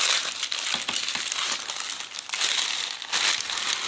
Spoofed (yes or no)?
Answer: no